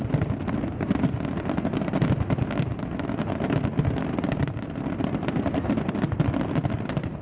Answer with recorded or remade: recorded